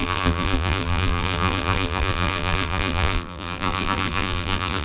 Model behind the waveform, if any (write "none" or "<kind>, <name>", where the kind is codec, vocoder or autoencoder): vocoder, BigVGAN v2